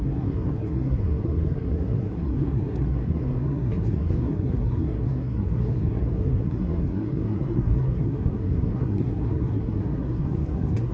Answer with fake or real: fake